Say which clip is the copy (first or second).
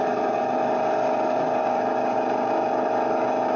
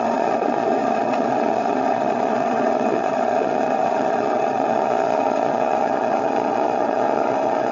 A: second